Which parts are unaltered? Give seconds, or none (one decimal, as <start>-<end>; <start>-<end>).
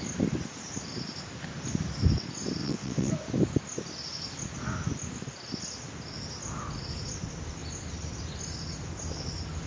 0.0-2.6; 3.1-9.7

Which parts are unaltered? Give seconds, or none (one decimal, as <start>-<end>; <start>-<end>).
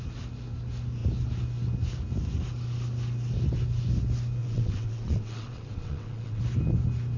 0.0-4.4; 6.4-7.2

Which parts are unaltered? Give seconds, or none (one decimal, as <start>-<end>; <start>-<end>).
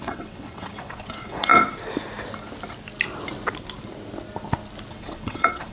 1.5-4.9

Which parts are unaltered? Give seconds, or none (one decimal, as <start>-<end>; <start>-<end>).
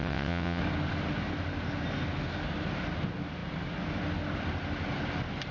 0.6-5.5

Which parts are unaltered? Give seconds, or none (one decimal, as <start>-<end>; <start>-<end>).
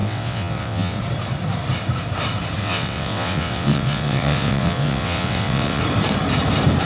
1.0-2.6; 5.8-6.9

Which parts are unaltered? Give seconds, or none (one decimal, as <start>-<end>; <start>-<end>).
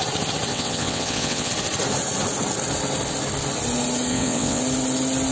0.0-0.5; 1.5-4.1; 4.6-5.3